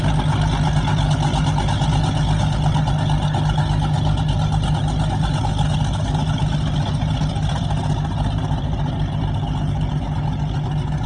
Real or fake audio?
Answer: real